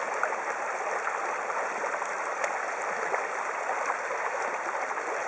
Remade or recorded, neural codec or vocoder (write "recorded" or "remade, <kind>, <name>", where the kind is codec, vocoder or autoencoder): recorded